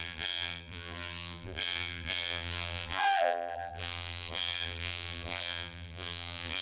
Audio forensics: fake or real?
fake